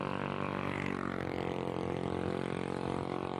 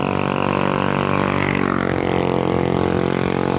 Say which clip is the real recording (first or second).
second